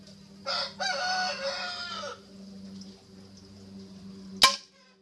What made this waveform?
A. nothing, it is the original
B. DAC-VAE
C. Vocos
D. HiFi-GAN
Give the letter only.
A